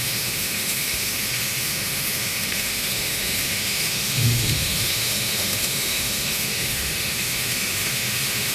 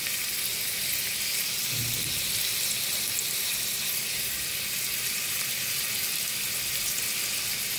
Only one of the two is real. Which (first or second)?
second